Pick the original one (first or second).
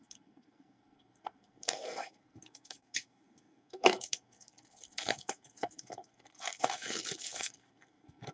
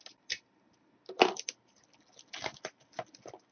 second